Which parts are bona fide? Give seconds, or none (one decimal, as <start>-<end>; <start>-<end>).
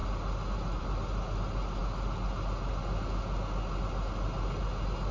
0.0-5.1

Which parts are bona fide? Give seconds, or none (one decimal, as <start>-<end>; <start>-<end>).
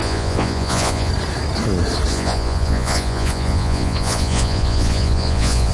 1.1-2.1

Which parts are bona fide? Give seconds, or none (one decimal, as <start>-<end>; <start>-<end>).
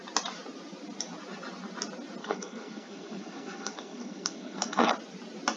0.0-2.2; 4.9-5.6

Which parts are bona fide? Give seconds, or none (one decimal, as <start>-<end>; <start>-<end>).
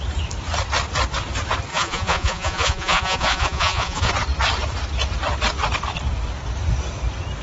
0.0-1.7; 4.1-7.4